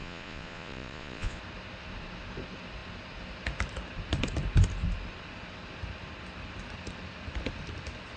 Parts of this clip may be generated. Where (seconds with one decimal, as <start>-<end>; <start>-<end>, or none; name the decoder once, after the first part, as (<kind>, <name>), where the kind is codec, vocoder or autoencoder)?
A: 0.0-1.4 (vocoder, Vocos)